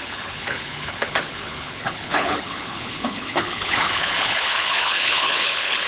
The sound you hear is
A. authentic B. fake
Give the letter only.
B